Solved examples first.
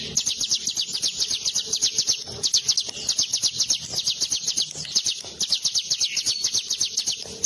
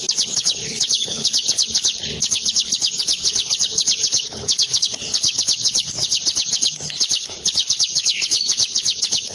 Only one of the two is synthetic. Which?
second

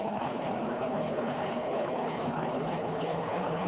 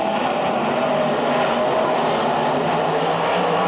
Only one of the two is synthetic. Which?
first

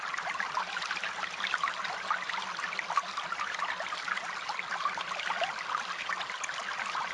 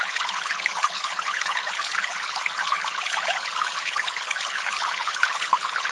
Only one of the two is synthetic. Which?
second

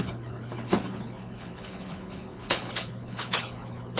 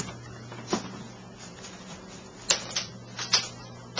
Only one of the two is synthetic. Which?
first